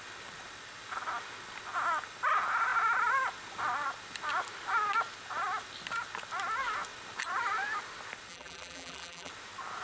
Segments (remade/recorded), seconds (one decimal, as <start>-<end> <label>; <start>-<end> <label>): 0.0-8.3 recorded; 8.3-9.3 remade; 9.3-9.8 recorded